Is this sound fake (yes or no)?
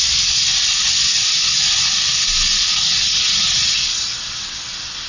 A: no